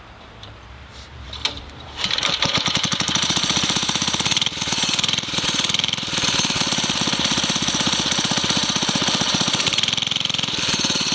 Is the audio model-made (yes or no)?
yes